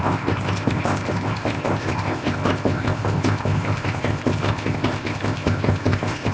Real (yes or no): no